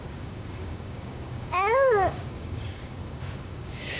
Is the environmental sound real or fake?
fake